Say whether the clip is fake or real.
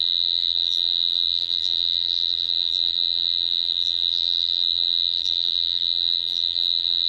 fake